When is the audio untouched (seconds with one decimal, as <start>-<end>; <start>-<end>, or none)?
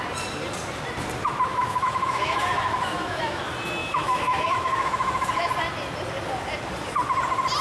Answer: 0.0-1.5; 3.4-3.8; 5.5-7.6